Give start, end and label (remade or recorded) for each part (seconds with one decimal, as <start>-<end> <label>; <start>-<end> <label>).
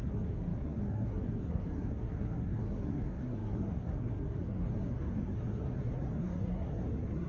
0.0-7.3 remade